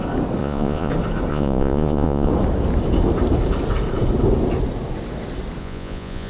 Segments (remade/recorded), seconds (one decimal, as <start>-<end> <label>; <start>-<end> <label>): 0.0-0.4 recorded; 0.4-0.9 remade; 0.9-1.3 recorded; 1.3-2.3 remade; 2.3-5.6 recorded; 5.6-6.3 remade